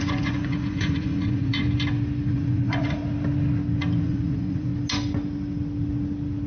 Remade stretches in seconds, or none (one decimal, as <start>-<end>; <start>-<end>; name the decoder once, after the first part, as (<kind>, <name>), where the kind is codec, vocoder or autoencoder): 0.0-1.6 (vocoder, Vocos); 2.3-3.0; 4.0-4.7